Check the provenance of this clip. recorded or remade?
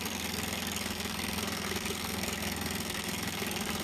remade